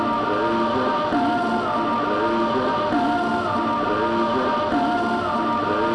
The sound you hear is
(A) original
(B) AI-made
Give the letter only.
A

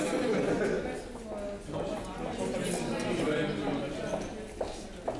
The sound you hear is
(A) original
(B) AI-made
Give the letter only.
A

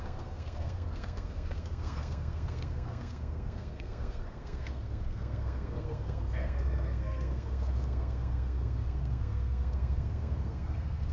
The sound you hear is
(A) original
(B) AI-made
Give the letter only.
B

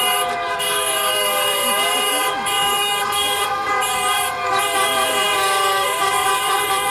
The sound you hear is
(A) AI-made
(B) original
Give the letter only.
A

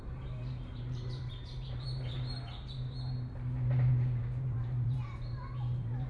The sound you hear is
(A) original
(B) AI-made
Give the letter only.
B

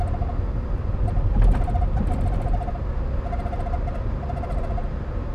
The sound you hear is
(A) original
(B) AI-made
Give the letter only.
A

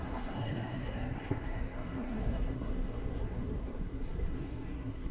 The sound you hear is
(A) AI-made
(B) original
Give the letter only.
A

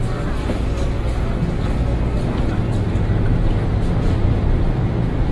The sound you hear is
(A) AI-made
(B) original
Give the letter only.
B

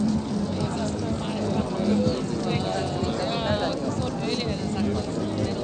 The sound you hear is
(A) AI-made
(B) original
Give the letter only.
B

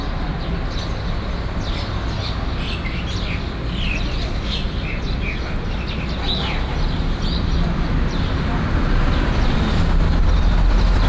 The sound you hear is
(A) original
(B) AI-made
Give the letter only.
A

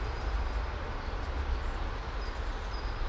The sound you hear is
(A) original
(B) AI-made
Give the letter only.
A